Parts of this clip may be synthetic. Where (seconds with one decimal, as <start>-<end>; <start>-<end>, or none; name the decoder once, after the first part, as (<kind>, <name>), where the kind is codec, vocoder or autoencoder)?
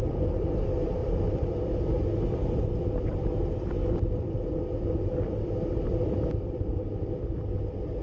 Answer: 1.0-1.7 (vocoder, BigVGAN v2); 3.8-4.6